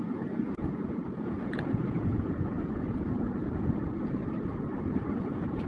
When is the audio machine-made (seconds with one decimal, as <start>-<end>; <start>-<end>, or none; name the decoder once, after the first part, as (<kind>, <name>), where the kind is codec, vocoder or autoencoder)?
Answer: 0.0-4.2 (vocoder, Vocos); 5.3-5.7